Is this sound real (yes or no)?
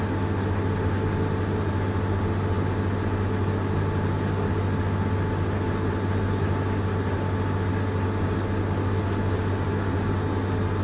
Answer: yes